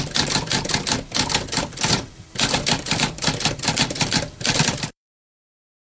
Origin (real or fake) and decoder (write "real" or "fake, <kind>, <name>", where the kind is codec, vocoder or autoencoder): fake, vocoder, BigVGAN v2